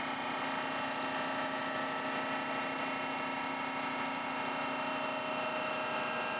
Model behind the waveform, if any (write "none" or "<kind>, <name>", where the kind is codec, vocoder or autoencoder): none